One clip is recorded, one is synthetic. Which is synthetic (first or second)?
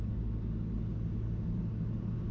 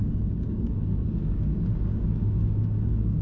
second